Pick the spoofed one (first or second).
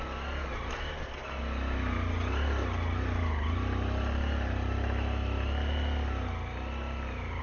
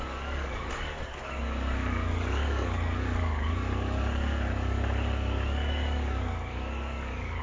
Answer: second